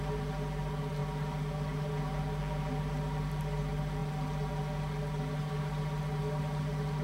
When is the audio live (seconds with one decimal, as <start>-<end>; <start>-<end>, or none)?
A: 0.0-7.0